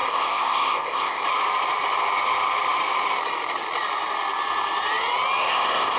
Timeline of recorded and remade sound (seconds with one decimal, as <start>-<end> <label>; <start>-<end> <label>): 0.0-1.2 remade; 1.2-5.4 recorded; 5.4-6.0 remade